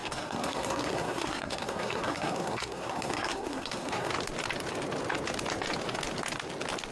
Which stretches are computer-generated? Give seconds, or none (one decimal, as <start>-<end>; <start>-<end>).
0.0-4.1